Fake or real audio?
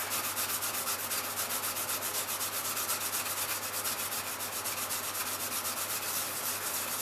real